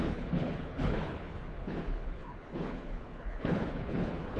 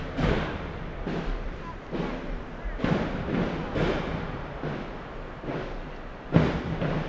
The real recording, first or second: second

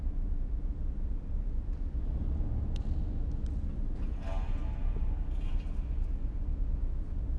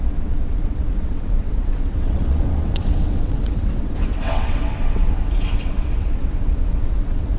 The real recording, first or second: first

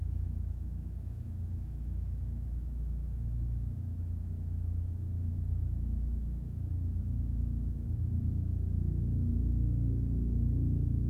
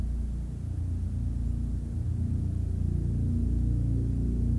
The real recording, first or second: second